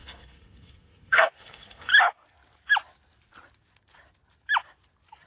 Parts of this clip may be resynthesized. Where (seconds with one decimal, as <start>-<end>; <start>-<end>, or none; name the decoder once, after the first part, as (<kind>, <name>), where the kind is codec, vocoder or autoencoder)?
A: 0.0-1.9 (codec, SNAC)